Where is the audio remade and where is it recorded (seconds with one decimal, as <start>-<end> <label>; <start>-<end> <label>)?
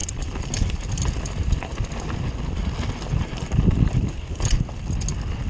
0.0-5.5 recorded